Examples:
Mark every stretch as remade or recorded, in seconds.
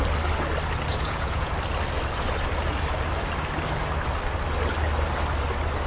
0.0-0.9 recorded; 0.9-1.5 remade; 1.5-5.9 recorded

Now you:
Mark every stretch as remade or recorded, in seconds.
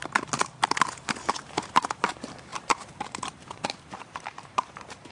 0.0-1.3 recorded; 1.3-5.1 remade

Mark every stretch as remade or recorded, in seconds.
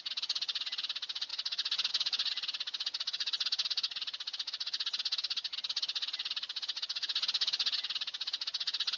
0.0-9.0 recorded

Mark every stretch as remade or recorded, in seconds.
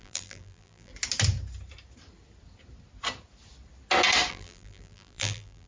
0.0-0.9 remade; 0.9-4.3 recorded; 4.3-5.7 remade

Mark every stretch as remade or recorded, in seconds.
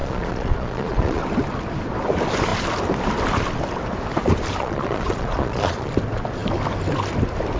0.0-1.2 remade; 1.2-4.6 recorded; 4.6-5.9 remade; 5.9-7.6 recorded